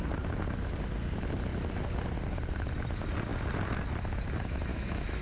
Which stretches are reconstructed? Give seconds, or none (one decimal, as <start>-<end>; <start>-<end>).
4.7-5.2